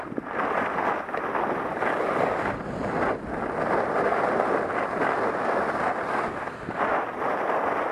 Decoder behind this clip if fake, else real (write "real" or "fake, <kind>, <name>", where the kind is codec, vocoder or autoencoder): real